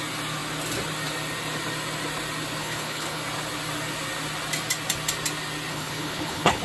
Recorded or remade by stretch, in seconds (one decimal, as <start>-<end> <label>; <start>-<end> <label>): 0.0-2.6 recorded; 2.6-3.2 remade; 3.2-5.7 recorded; 5.7-6.6 remade